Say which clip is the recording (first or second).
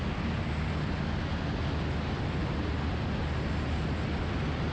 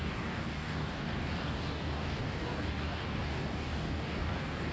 first